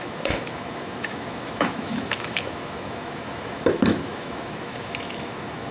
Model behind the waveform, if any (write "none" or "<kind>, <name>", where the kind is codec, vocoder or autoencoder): autoencoder, DAC-VAE